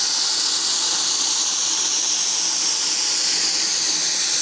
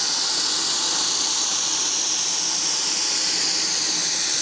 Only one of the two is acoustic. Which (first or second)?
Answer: first